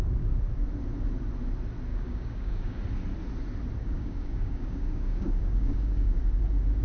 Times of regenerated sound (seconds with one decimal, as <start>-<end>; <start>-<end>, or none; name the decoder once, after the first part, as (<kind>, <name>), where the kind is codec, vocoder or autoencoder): 1.9-2.8 (codec, DAC); 3.8-6.2